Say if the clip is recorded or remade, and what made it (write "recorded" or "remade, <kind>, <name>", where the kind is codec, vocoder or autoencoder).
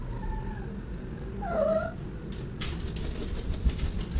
recorded